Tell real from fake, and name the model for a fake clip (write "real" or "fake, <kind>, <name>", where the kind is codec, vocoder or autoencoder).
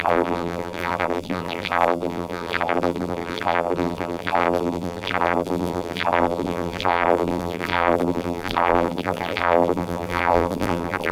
fake, vocoder, BigVGAN v2